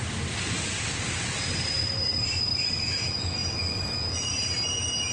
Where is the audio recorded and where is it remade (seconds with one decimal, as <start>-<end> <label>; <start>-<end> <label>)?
0.0-5.1 recorded